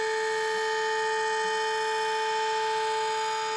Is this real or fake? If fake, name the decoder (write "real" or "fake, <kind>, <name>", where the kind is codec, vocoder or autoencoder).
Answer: real